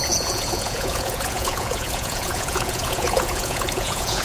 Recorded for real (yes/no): no